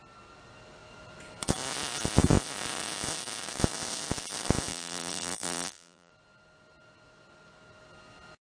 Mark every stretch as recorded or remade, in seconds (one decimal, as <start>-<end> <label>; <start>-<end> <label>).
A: 0.0-4.7 recorded; 4.7-6.1 remade; 6.1-8.4 recorded

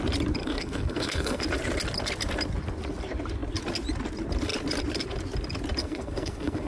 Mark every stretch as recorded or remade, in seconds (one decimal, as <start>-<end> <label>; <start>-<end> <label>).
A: 0.0-0.4 recorded; 0.4-1.4 remade; 1.4-5.8 recorded; 5.8-6.7 remade

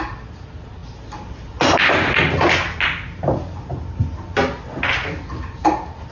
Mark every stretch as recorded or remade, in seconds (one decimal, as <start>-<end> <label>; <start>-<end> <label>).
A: 0.0-6.1 recorded

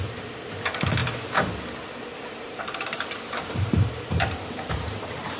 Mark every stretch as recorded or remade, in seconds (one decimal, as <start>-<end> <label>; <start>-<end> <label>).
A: 0.0-1.0 recorded; 1.0-1.5 remade; 1.5-2.1 recorded; 2.1-5.4 remade

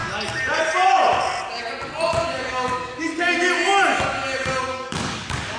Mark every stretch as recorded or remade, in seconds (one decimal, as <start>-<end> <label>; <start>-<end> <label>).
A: 0.0-2.2 recorded; 2.2-3.1 remade; 3.1-4.7 recorded; 4.7-5.6 remade